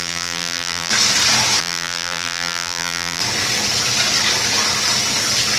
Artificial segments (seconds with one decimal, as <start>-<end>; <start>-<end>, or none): 0.0-0.9; 1.6-3.2